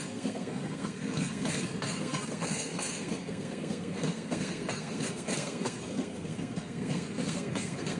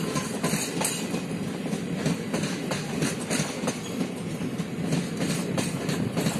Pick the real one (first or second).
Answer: second